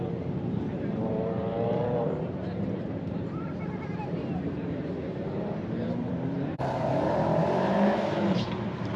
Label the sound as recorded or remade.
remade